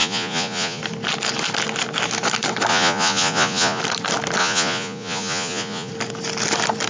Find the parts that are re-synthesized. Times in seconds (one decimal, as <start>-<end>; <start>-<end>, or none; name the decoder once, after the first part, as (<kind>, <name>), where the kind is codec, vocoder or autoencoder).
0.0-0.8 (vocoder, Vocos); 2.7-3.8; 4.4-5.9